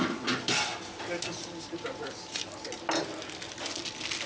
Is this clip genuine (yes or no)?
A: yes